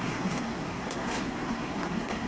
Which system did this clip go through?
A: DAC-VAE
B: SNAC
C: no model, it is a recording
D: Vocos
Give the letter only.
B